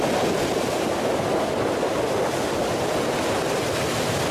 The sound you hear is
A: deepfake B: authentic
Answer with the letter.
B